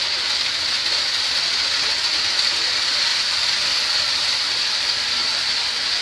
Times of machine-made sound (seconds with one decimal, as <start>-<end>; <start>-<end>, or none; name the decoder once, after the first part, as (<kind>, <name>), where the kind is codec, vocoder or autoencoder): 0.8-1.3 (vocoder, BigVGAN v2); 5.3-6.0